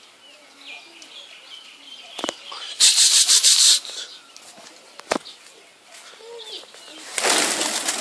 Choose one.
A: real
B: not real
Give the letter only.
A